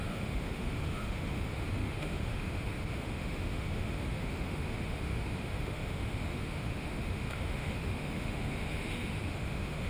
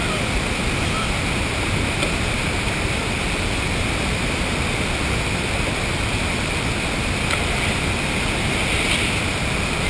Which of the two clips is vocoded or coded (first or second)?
first